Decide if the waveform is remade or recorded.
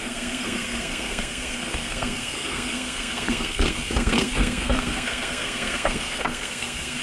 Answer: remade